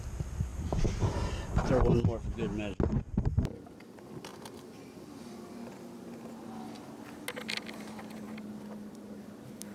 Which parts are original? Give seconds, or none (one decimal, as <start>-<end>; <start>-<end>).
0.0-9.7